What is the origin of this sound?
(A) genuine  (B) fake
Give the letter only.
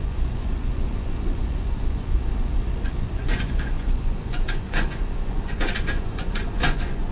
B